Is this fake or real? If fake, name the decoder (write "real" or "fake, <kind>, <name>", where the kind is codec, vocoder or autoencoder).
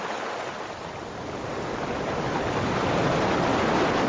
real